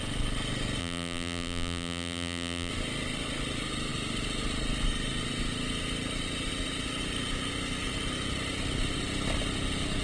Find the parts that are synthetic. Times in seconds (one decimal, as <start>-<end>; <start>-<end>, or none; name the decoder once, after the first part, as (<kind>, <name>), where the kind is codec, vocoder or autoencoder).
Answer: 0.8-2.7 (vocoder, BigVGAN v2)